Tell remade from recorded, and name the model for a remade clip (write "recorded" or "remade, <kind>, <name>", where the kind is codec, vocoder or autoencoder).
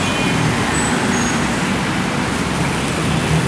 recorded